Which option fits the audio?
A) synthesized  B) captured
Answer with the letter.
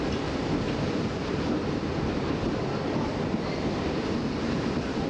A